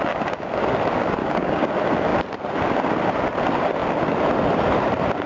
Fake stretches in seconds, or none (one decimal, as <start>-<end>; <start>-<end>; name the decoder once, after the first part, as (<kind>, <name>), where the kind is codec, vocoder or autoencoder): 1.2-1.7 (codec, DAC)